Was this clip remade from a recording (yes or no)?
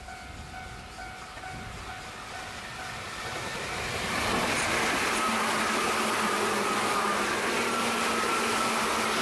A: no